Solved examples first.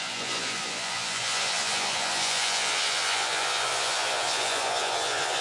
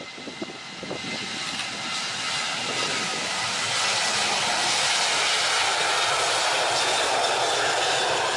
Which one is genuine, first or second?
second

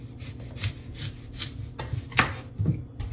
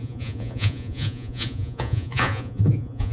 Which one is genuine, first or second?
first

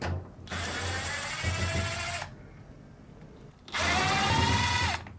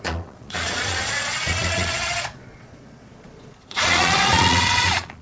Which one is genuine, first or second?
first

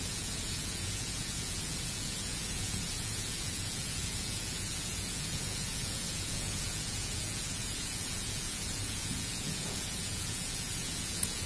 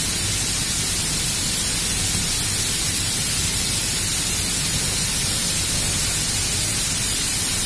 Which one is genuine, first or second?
second